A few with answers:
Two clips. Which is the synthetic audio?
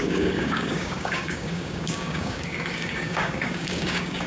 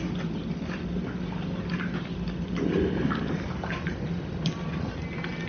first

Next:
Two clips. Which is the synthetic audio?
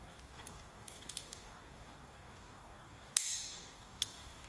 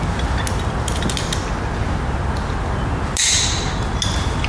first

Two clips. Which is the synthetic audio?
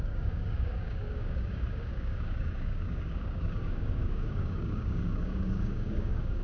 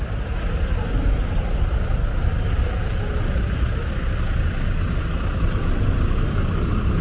first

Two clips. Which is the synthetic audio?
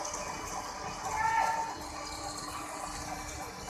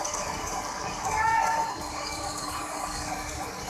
second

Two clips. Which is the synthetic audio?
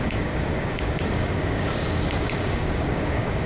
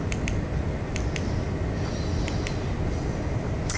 first